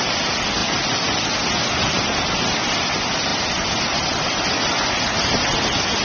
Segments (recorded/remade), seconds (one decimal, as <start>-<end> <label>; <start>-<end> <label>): 0.0-6.0 recorded